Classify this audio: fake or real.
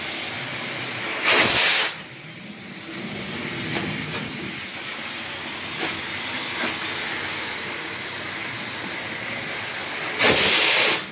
real